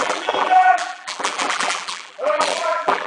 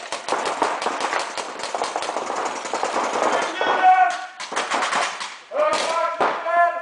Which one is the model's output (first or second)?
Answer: first